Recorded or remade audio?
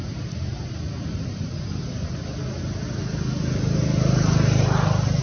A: recorded